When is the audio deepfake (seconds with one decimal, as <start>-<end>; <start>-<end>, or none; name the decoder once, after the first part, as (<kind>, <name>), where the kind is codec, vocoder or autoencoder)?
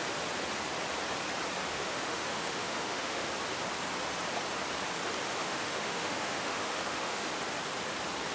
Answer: 1.7-3.3 (autoencoder, DAC-VAE); 5.2-7.3